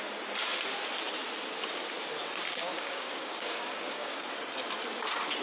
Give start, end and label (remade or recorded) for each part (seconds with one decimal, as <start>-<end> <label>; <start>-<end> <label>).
0.0-2.6 recorded; 2.6-4.3 remade; 4.3-5.4 recorded